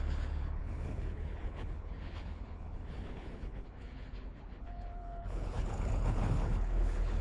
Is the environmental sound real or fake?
fake